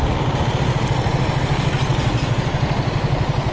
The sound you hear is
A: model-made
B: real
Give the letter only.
B